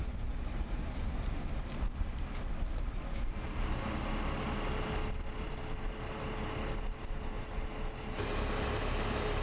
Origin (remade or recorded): recorded